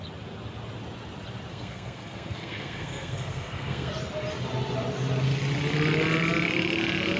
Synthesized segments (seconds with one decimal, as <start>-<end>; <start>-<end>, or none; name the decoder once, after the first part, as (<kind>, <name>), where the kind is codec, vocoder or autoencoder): 1.5-3.9 (codec, SNAC)